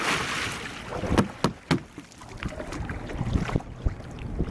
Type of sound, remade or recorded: recorded